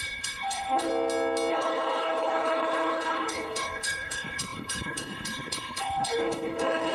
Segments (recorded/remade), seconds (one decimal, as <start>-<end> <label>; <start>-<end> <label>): 0.0-0.9 remade; 0.9-1.5 recorded; 1.5-6.9 remade